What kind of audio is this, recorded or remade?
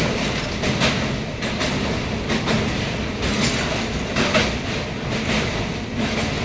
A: recorded